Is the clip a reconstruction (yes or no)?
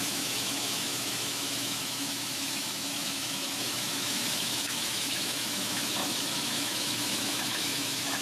yes